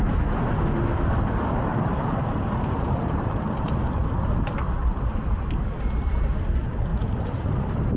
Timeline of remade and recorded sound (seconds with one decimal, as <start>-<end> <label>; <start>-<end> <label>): 0.0-1.7 recorded; 1.7-4.1 remade; 4.1-4.8 recorded; 4.8-6.1 remade; 6.1-6.9 recorded; 6.9-8.0 remade